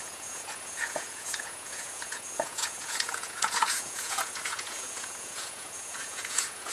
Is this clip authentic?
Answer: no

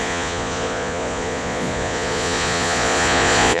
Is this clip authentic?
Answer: no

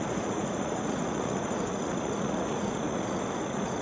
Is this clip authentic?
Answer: no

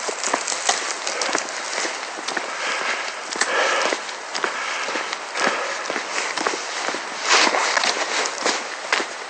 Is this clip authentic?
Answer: yes